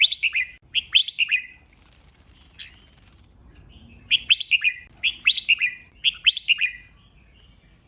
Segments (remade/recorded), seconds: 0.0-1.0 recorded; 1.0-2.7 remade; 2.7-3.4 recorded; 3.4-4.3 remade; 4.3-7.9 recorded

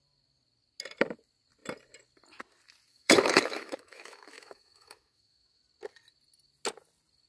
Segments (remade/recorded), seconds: 0.0-2.9 recorded; 2.9-5.6 remade; 5.6-7.3 recorded

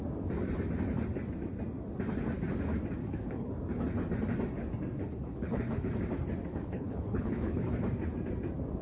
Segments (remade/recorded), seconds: 0.0-3.0 recorded; 3.0-3.5 remade; 3.5-5.0 recorded; 5.0-5.9 remade; 5.9-6.5 recorded; 6.5-7.7 remade; 7.7-8.8 recorded

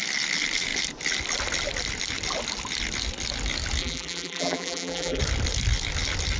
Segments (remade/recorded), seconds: 0.0-3.8 recorded; 3.8-5.2 remade; 5.2-6.4 recorded